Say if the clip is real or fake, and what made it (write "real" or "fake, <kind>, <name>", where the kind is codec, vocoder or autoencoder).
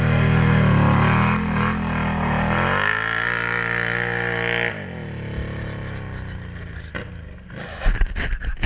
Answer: real